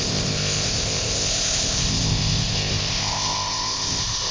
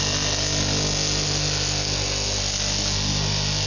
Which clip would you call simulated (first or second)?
first